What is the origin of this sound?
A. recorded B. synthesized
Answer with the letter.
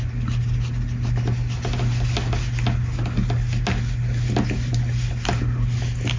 A